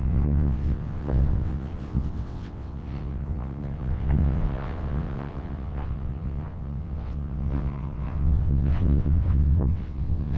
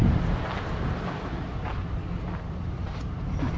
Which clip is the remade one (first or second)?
first